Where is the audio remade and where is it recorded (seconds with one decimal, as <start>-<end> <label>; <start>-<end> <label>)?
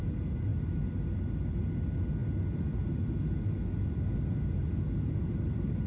0.0-5.9 recorded